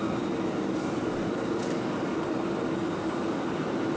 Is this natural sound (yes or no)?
yes